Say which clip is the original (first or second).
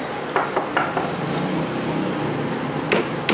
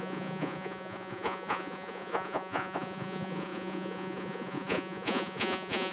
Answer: first